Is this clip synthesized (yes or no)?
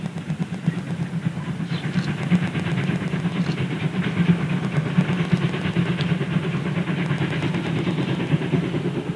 no